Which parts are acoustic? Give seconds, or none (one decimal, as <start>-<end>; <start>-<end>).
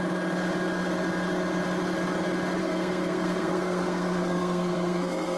0.0-2.6